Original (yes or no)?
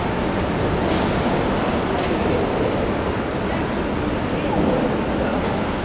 yes